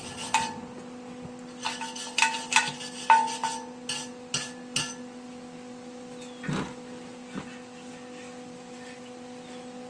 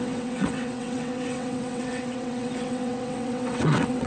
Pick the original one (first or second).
first